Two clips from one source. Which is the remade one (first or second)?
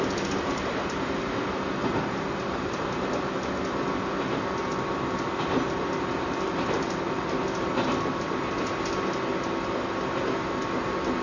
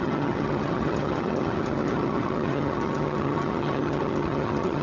second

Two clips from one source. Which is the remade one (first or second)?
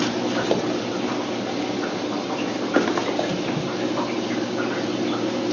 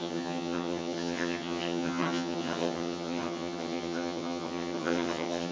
second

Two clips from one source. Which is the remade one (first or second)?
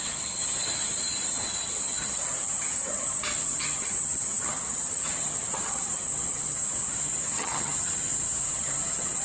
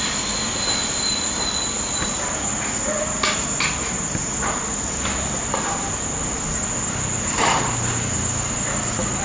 first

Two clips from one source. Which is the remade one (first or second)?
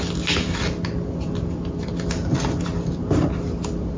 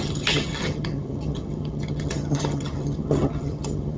second